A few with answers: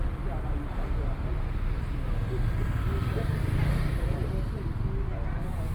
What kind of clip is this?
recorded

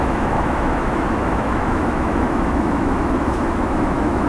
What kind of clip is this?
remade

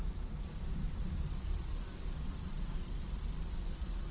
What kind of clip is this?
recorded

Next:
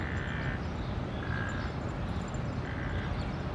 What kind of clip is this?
recorded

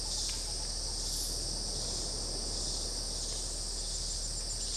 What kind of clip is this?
recorded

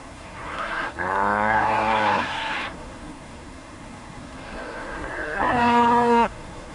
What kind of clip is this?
remade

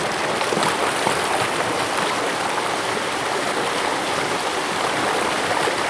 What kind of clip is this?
recorded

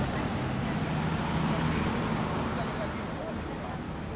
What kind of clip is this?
recorded